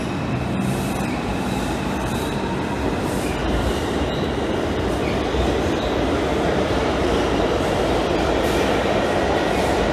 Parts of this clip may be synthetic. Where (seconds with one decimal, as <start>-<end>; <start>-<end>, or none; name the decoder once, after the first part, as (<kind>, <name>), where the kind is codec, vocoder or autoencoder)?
3.4-4.5 (vocoder, BigVGAN v2)